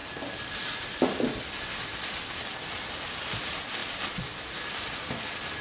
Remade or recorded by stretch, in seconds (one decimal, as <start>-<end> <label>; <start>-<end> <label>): 0.0-3.8 recorded; 3.8-4.6 remade; 4.6-5.6 recorded